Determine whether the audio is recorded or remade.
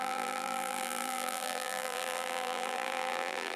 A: remade